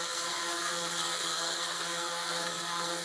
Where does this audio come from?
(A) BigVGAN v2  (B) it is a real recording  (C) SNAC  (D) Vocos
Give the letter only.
C